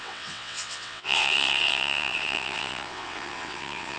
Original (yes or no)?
no